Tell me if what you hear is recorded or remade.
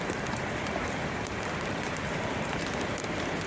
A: remade